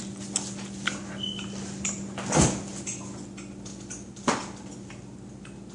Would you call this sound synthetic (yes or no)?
no